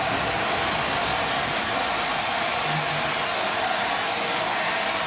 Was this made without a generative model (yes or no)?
yes